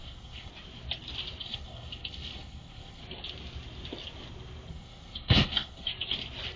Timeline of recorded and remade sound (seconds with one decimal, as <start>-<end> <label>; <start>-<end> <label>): 0.0-0.5 remade; 0.5-1.4 recorded; 1.4-3.0 remade; 3.0-4.7 recorded; 4.7-5.9 remade; 5.9-6.6 recorded